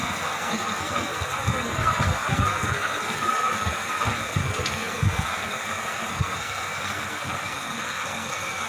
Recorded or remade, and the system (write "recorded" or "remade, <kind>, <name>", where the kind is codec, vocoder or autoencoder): remade, codec, SNAC